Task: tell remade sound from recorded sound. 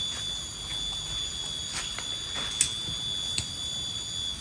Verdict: recorded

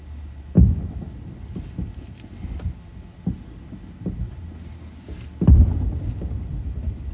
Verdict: recorded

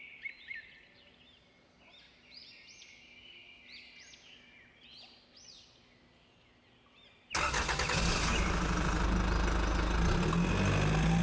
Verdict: recorded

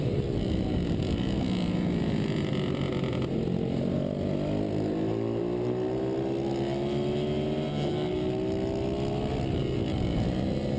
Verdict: recorded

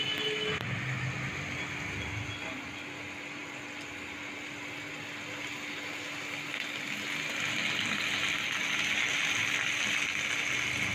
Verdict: recorded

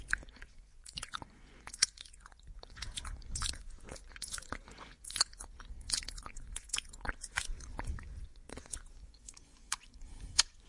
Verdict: remade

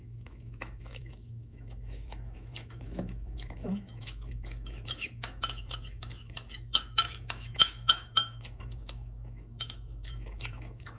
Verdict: remade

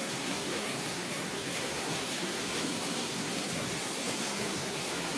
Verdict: remade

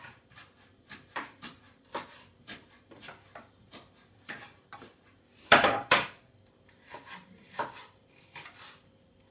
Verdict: remade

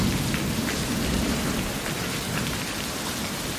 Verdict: recorded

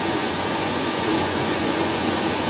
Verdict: remade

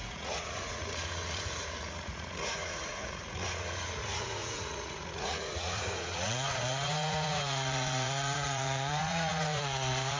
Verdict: remade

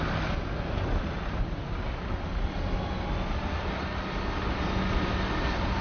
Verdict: recorded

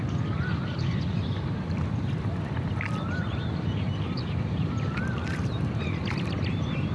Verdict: recorded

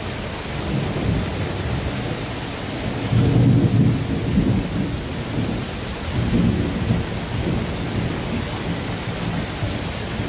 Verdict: recorded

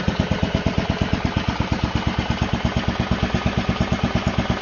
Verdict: recorded